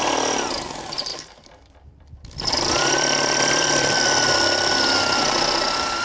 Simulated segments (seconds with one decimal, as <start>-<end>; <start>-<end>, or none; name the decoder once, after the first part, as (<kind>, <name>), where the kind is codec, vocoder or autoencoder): 1.1-4.7 (vocoder, BigVGAN v2)